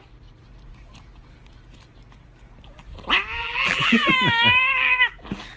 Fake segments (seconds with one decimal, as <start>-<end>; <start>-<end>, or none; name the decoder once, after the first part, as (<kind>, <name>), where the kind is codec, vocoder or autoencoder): 3.4-4.1 (vocoder, BigVGAN v2)